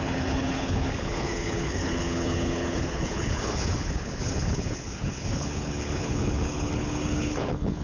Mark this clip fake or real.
fake